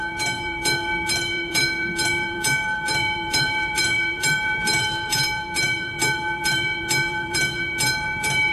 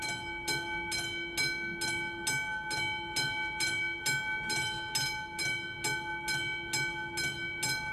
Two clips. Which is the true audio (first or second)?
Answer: second